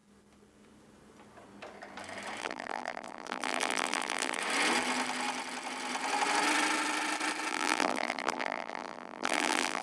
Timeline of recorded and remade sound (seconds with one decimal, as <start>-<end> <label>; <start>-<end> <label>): 0.0-2.4 recorded; 2.4-4.4 remade; 4.4-7.5 recorded; 7.5-9.8 remade